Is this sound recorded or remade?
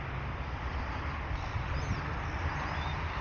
recorded